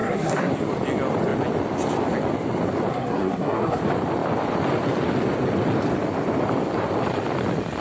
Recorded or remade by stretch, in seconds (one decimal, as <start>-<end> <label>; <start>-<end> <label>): 0.0-0.5 remade; 0.5-2.9 recorded; 2.9-3.8 remade; 3.8-7.8 recorded